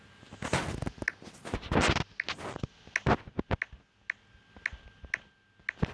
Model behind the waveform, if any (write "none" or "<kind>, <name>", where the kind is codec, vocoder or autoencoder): none